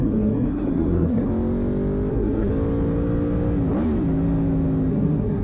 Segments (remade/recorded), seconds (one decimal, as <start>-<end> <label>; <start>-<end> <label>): 0.0-1.3 remade; 1.3-2.1 recorded; 2.1-2.5 remade; 2.5-4.9 recorded; 4.9-5.4 remade

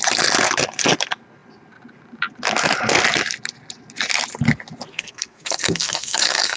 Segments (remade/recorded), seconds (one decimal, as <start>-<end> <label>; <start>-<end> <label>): 0.0-4.9 recorded; 4.9-6.6 remade

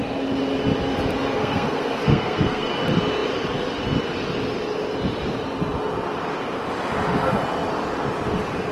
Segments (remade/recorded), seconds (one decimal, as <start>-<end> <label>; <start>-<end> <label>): 0.0-1.4 recorded; 1.4-2.7 remade; 2.7-8.7 recorded

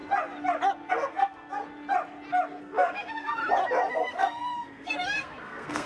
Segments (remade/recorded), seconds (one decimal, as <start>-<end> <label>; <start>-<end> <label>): 0.0-0.9 recorded; 0.9-1.6 remade; 1.6-2.6 recorded; 2.6-3.4 remade; 3.4-3.9 recorded; 3.9-5.9 remade

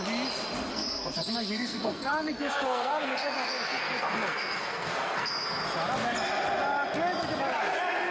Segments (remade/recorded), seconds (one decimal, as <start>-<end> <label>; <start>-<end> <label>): 0.0-0.7 recorded; 0.7-5.6 remade; 5.6-8.1 recorded

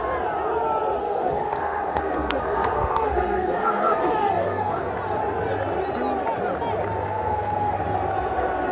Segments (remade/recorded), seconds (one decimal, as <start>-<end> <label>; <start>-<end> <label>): 0.0-1.0 recorded; 1.0-4.9 remade; 4.9-7.1 recorded; 7.1-7.8 remade; 7.8-8.7 recorded